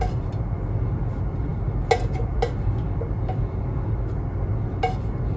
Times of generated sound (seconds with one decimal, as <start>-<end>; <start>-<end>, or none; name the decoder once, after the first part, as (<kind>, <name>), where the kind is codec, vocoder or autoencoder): none